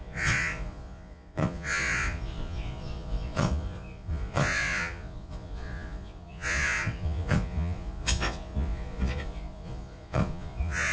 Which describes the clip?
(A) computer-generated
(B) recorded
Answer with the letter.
A